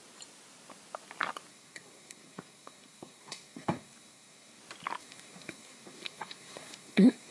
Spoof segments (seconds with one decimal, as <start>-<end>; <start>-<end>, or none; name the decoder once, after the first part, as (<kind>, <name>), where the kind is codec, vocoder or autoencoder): 1.5-4.6 (codec, SNAC); 5.0-7.3